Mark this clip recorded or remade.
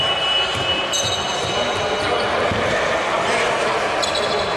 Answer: recorded